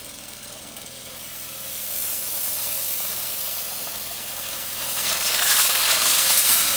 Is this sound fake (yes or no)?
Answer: yes